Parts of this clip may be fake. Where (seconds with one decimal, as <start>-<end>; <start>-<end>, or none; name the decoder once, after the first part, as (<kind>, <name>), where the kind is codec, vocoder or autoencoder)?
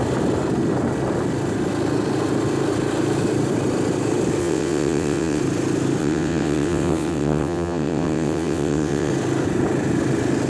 4.4-5.4 (vocoder, WaveNeXt); 6.0-9.1